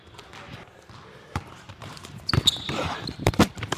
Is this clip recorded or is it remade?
remade